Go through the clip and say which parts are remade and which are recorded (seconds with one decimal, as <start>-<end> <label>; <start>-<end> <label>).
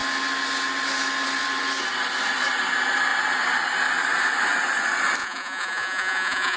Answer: 0.0-5.2 recorded; 5.2-6.6 remade